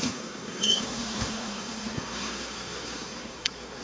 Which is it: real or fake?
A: fake